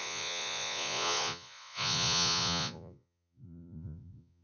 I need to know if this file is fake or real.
fake